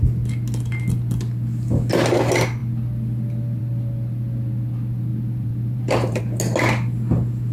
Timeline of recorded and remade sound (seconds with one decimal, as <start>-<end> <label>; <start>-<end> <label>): 0.0-5.1 recorded; 5.1-6.2 remade; 6.2-7.5 recorded